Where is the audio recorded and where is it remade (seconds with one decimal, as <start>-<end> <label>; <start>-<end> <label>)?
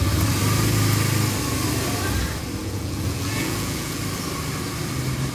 0.0-2.6 recorded; 2.6-4.0 remade; 4.0-5.3 recorded